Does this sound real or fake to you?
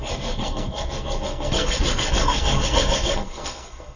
fake